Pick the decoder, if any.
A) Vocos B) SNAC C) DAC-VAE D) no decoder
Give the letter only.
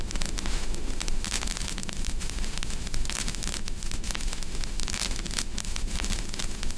C